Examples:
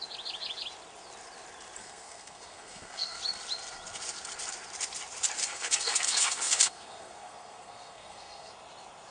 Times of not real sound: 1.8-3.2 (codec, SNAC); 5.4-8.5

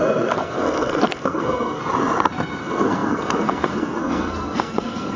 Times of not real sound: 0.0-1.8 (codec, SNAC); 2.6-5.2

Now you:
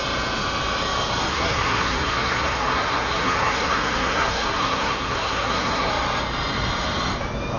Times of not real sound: 1.3-5.9 (codec, SNAC)

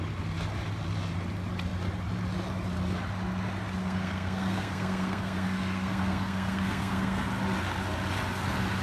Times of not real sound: 3.8-7.3 (codec, SNAC)